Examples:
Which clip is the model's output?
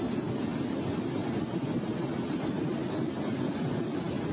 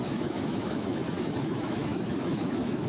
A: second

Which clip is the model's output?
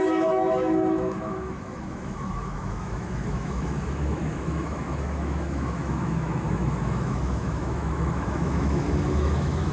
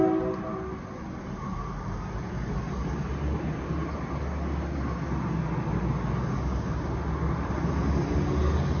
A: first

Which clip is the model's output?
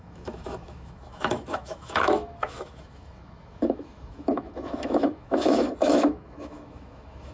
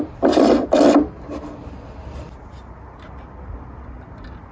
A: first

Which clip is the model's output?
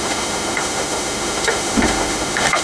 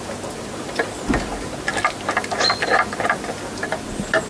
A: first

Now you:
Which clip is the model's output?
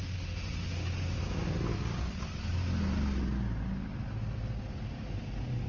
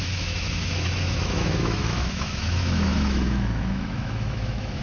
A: second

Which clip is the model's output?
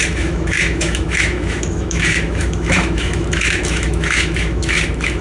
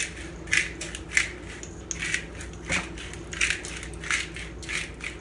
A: first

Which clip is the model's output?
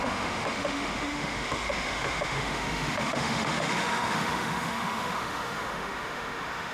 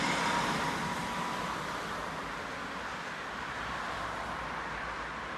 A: first